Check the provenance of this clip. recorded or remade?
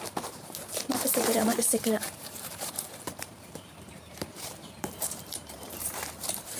remade